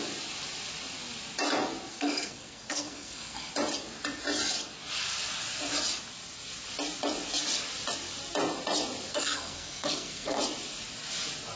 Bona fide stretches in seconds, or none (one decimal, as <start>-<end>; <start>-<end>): 0.0-1.9; 3.5-9.1; 10.4-11.6